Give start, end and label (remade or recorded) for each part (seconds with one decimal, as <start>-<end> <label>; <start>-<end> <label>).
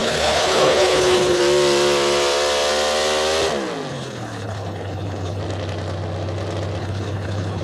0.0-1.4 remade; 1.4-3.9 recorded; 3.9-5.4 remade; 5.4-6.8 recorded; 6.8-7.6 remade